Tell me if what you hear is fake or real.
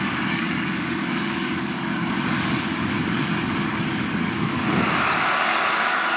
fake